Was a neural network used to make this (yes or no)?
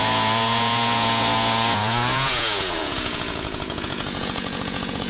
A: yes